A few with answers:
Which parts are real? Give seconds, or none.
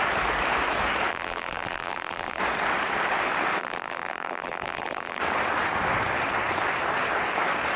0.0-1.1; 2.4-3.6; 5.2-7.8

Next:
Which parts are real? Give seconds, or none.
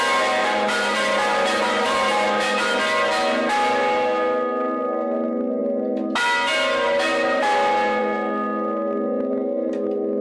0.0-0.4; 2.8-10.2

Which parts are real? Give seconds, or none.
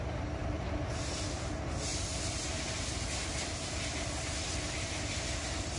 0.0-1.9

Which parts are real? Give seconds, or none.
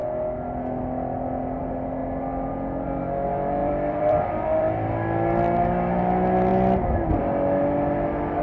0.0-3.6; 4.7-8.4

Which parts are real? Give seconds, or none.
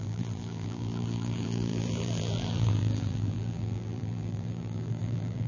none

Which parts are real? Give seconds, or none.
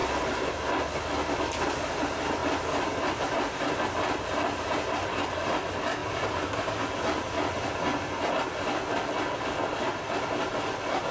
0.6-6.0; 6.7-11.1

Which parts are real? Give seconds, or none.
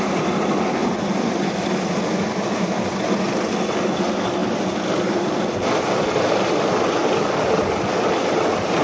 0.0-8.8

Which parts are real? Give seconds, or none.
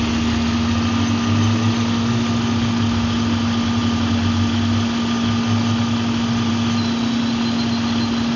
0.0-8.4